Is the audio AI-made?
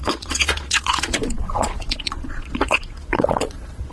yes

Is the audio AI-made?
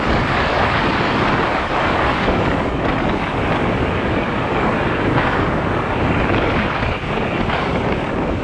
yes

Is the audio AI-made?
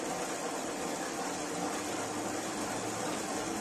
no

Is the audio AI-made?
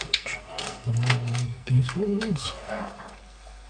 yes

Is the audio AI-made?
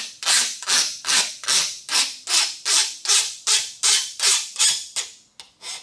no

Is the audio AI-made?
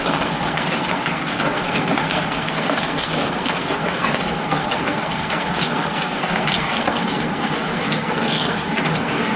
yes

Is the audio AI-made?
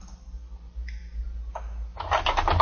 no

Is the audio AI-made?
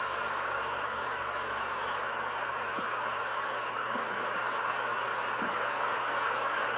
yes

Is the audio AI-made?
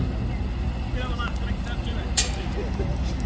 no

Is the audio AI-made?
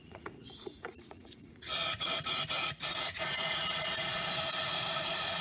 yes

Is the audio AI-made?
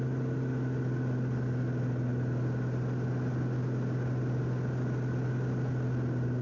no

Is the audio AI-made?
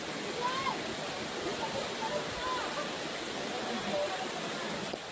no